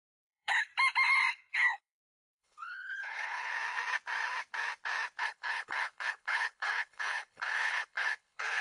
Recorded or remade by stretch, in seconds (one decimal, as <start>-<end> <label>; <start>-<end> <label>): 0.0-0.7 remade; 0.7-1.3 recorded; 1.3-3.5 remade; 3.5-5.2 recorded; 5.2-8.6 remade